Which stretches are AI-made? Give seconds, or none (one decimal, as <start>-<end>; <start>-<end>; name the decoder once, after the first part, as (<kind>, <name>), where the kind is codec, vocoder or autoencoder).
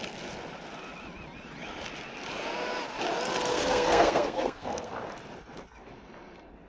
3.5-4.9 (codec, SNAC)